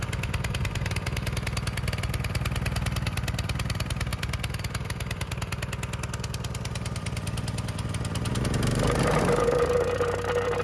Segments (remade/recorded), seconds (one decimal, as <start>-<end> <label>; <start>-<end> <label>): 0.0-10.6 recorded